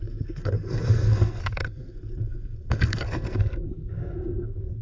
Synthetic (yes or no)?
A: yes